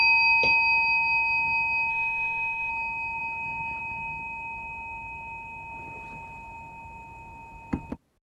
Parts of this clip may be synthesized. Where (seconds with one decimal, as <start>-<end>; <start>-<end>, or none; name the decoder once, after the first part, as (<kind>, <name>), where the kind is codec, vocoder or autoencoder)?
1.9-2.7 (autoencoder, DAC-VAE)